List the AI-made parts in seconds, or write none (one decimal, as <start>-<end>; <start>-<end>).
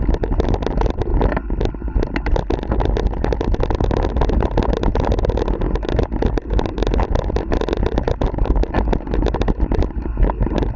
none